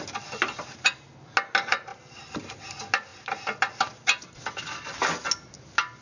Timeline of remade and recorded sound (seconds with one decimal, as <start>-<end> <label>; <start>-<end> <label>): 0.0-6.0 recorded